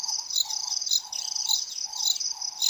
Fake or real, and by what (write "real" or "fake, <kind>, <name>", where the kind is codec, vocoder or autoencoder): real